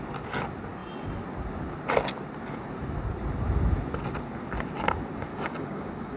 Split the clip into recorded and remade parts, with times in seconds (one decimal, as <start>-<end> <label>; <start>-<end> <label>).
0.0-5.3 recorded; 5.3-6.2 remade